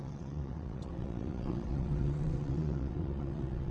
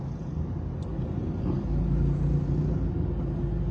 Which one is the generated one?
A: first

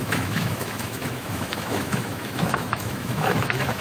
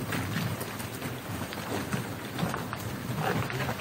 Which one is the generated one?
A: first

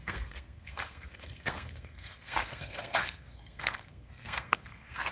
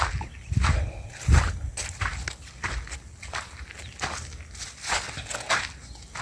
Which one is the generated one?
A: first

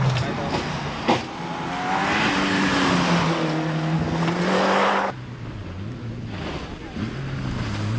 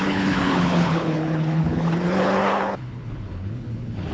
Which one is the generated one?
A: second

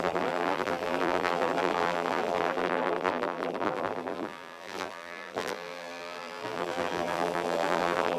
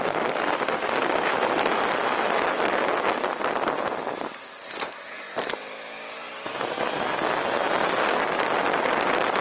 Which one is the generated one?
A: first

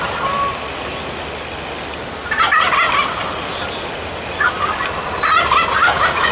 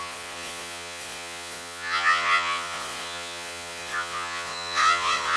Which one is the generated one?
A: second